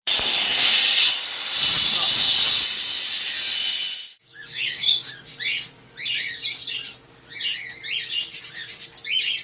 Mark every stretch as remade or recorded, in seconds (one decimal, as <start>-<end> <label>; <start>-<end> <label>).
0.0-4.1 recorded; 4.1-5.1 remade; 5.1-9.4 recorded